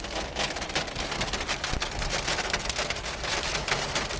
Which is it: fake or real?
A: real